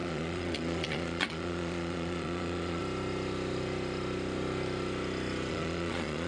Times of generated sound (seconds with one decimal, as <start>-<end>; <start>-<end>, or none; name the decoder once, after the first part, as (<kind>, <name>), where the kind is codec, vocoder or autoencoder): 0.0-2.8 (vocoder, Vocos); 5.5-6.3